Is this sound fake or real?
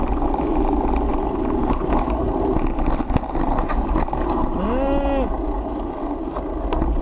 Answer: real